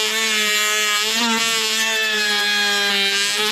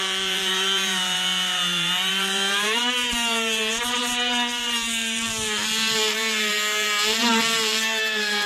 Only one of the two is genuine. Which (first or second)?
first